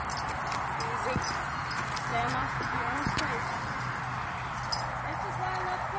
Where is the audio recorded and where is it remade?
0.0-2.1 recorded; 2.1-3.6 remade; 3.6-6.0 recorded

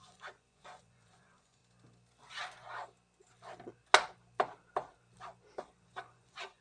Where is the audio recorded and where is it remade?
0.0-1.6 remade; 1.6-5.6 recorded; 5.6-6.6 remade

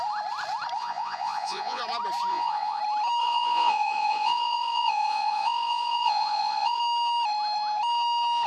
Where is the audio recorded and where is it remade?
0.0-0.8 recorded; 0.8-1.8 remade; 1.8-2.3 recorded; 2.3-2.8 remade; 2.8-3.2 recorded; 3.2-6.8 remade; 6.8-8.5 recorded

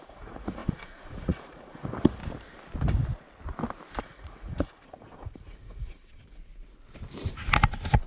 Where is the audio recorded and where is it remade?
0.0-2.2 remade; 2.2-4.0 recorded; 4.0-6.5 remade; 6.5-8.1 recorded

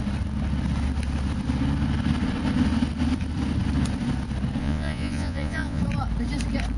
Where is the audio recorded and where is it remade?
0.0-4.6 recorded; 4.6-5.8 remade; 5.8-6.8 recorded